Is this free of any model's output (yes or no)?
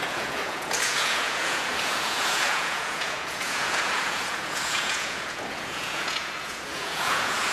no